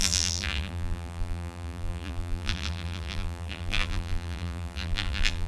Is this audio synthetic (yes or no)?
yes